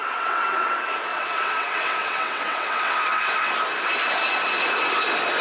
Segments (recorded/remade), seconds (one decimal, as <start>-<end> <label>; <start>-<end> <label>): 0.0-0.7 remade; 0.7-1.1 recorded; 1.1-3.5 remade; 3.5-5.4 recorded